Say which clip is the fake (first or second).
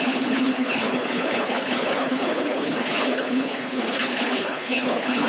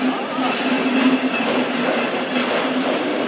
first